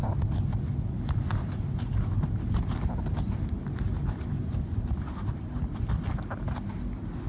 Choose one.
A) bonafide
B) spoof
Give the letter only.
A